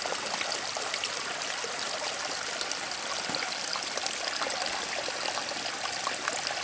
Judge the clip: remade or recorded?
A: recorded